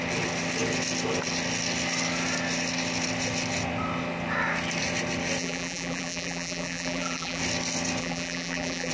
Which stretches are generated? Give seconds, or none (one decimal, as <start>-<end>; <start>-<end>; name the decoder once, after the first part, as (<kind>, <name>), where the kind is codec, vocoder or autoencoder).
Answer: 5.4-7.4 (vocoder, BigVGAN v2); 8.0-8.9